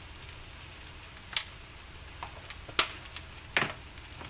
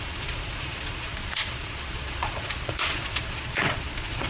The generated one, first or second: second